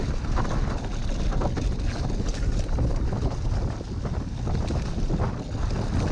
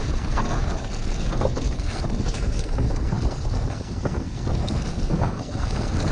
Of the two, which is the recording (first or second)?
first